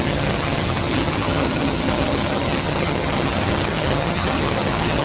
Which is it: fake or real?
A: fake